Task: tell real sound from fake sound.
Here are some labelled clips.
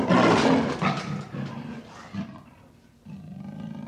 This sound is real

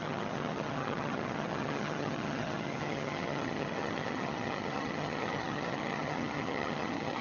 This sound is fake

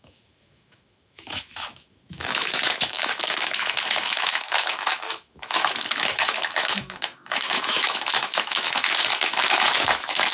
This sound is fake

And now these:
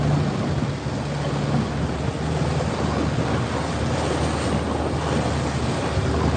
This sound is real